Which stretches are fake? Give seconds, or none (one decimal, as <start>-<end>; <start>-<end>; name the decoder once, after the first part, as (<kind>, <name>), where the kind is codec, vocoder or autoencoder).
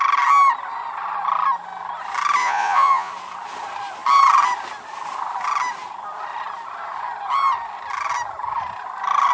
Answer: 2.4-3.1 (vocoder, Vocos)